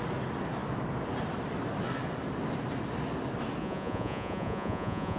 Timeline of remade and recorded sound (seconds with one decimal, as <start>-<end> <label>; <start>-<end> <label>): 0.0-3.6 recorded; 3.6-5.2 remade